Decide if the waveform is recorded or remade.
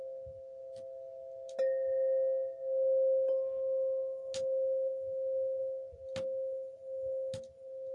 recorded